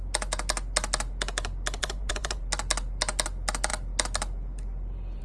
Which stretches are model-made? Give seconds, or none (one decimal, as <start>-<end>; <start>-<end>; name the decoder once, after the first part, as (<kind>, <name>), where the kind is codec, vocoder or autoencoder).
1.8-2.4 (vocoder, Vocos)